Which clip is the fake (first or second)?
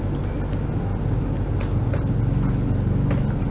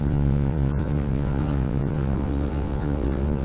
second